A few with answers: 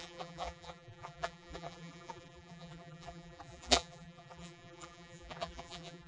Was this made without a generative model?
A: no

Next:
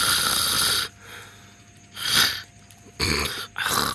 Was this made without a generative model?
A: yes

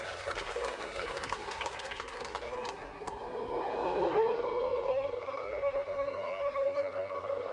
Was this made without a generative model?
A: no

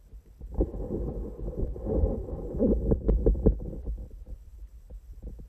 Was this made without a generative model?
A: no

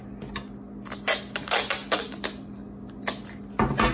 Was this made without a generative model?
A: yes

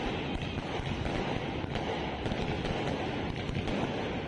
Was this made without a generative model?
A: yes